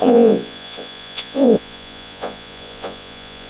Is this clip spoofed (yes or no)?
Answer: yes